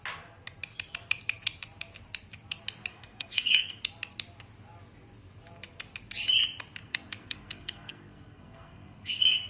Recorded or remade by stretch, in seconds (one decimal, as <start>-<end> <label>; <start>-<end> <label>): 0.0-2.9 recorded; 2.9-3.8 remade; 3.8-6.8 recorded; 6.8-9.5 remade